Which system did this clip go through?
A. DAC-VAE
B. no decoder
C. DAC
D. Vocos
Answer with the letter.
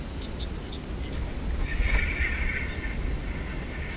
B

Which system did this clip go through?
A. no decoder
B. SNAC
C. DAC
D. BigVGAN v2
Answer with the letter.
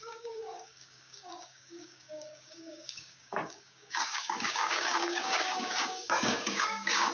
C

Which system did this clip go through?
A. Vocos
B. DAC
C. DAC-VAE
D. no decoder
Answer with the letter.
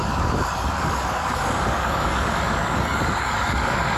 B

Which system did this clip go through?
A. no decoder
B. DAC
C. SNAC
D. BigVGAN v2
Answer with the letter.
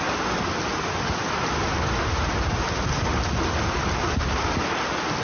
A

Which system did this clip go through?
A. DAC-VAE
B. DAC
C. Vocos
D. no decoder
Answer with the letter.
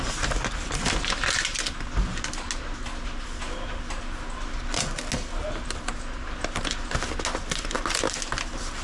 D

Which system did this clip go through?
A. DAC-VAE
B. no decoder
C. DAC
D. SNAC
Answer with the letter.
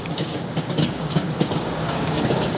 C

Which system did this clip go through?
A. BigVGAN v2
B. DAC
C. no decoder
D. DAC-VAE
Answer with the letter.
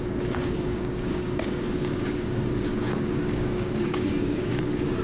B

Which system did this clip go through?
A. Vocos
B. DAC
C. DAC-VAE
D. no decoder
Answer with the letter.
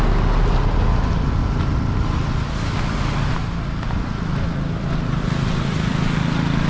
D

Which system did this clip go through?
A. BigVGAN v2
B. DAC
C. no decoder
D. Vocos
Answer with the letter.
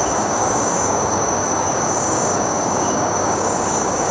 B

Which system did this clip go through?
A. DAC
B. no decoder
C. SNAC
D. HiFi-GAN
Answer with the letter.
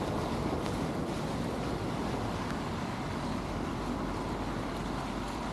B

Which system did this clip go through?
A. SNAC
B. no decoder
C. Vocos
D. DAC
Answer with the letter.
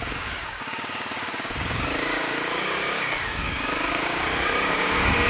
D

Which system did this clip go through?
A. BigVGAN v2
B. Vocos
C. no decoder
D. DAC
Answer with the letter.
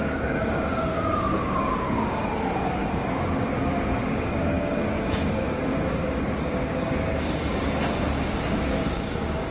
D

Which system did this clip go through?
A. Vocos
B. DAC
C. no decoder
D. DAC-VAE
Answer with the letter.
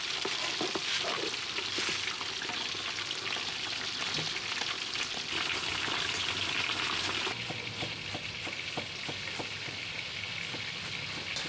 C